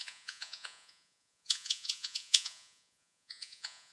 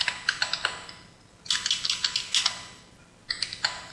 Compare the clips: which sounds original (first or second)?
second